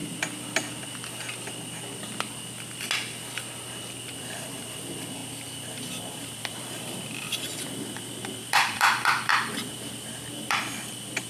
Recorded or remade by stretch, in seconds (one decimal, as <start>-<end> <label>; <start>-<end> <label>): 0.0-4.2 recorded; 4.2-5.2 remade; 5.2-5.9 recorded; 5.9-9.3 remade; 9.3-10.3 recorded; 10.3-11.3 remade